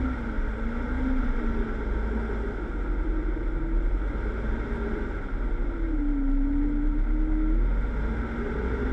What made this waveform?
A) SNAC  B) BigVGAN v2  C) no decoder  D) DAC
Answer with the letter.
C